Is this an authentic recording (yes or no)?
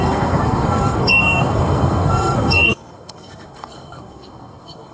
no